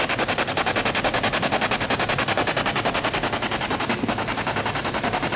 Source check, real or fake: real